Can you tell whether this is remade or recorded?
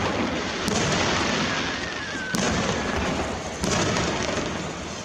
recorded